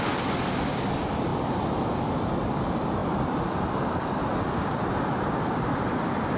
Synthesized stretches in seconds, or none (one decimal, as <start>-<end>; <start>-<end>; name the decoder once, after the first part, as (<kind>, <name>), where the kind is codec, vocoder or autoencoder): 0.0-1.3 (vocoder, BigVGAN v2); 2.0-3.0; 3.6-4.2; 5.4-6.4